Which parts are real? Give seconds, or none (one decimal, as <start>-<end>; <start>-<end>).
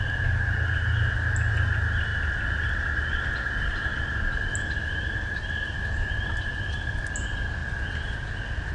0.0-8.7